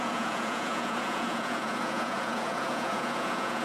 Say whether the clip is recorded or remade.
remade